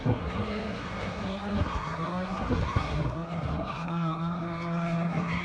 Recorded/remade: remade